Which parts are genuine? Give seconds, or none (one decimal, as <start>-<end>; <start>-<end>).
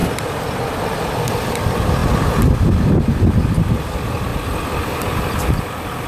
0.0-6.1